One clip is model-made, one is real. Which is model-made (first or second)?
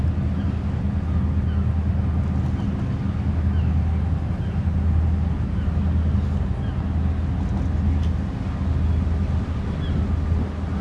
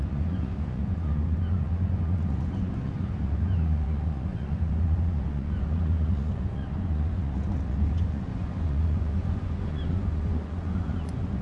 second